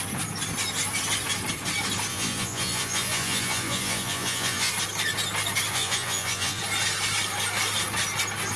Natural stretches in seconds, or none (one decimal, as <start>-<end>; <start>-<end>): 0.0-2.1; 4.7-5.7; 6.6-8.6